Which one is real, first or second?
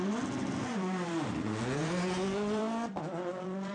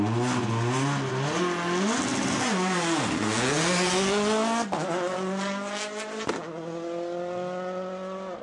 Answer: second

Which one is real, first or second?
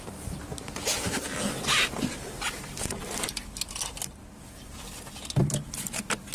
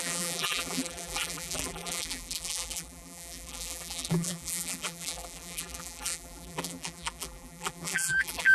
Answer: first